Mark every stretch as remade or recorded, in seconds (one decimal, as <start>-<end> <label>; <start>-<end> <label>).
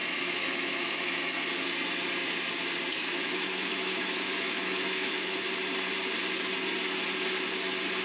0.0-1.2 remade; 1.2-3.0 recorded; 3.0-5.4 remade; 5.4-8.0 recorded